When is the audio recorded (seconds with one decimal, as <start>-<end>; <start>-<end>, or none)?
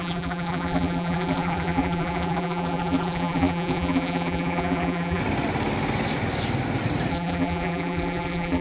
5.2-7.1